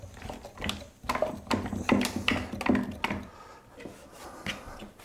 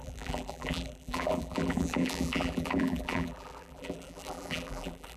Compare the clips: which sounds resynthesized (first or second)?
second